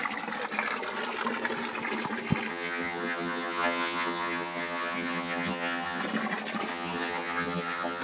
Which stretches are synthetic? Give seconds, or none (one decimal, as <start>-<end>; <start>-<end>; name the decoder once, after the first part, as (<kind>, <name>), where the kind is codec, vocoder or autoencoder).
2.5-6.0 (vocoder, HiFi-GAN); 6.7-8.0